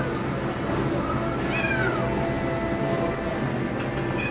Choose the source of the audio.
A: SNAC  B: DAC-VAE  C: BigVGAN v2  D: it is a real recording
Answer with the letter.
D